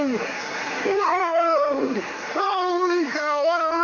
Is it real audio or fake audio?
fake